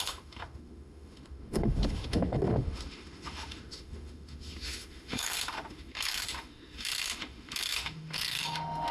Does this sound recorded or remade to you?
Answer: remade